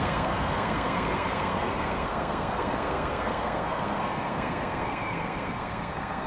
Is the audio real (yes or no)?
no